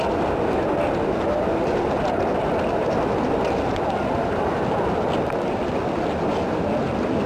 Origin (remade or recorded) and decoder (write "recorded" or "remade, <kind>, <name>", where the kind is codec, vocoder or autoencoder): recorded